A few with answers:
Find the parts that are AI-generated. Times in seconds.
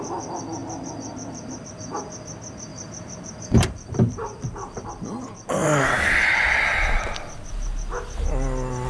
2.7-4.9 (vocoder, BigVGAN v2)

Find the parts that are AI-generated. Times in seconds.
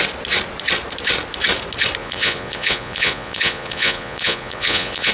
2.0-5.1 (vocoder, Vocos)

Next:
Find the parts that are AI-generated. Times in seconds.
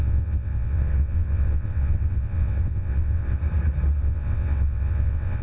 0.0-3.4 (vocoder, WaveNeXt); 4.0-5.4